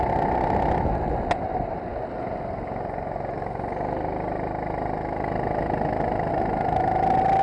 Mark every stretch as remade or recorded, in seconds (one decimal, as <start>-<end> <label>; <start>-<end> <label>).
0.0-7.4 recorded

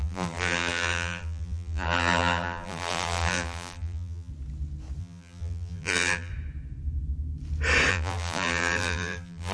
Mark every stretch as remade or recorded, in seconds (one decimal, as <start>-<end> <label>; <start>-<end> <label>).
0.0-4.3 remade; 4.3-5.0 recorded; 5.0-6.3 remade; 6.3-7.9 recorded; 7.9-9.5 remade

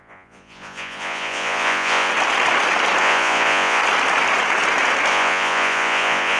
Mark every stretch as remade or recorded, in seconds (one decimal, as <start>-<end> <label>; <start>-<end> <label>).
0.0-2.1 remade; 2.1-3.0 recorded; 3.0-3.8 remade; 3.8-5.1 recorded; 5.1-6.4 remade

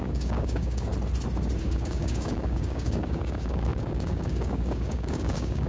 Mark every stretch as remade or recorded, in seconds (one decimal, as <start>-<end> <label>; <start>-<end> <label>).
0.0-0.9 remade; 0.9-1.6 recorded; 1.6-5.7 remade

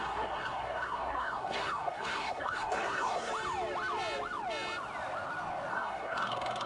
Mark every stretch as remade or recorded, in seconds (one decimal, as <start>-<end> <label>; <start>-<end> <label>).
0.0-3.3 remade; 3.3-5.7 recorded; 5.7-6.7 remade

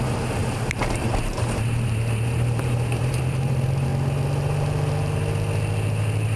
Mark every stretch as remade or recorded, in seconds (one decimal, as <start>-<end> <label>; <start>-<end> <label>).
0.0-3.9 remade; 3.9-6.4 recorded

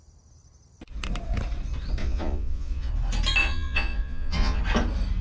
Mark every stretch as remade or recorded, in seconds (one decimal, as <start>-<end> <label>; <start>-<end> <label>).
0.0-2.0 recorded; 2.0-2.9 remade; 2.9-3.4 recorded; 3.4-4.6 remade; 4.6-5.2 recorded

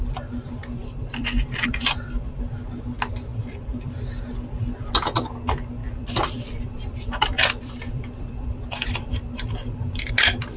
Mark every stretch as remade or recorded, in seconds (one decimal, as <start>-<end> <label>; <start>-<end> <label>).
0.0-0.8 recorded; 0.8-2.4 remade; 2.4-3.3 recorded; 3.3-3.9 remade; 3.9-5.8 recorded; 5.8-10.1 remade; 10.1-10.6 recorded